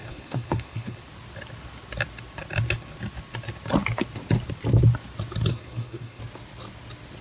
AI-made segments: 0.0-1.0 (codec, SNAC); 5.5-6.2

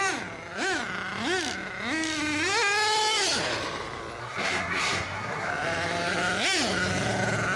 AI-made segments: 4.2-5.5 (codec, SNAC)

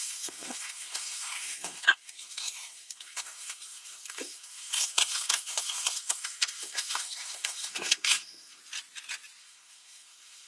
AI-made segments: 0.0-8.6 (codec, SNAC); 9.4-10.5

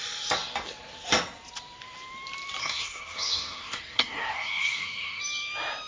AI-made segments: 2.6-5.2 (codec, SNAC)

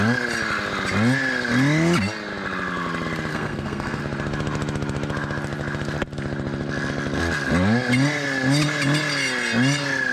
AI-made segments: 3.3-4.0 (codec, SNAC)

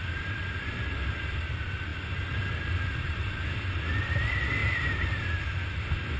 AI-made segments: none